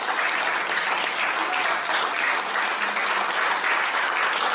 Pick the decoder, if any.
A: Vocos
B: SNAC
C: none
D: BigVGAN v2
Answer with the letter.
C